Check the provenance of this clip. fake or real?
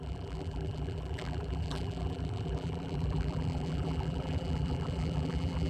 fake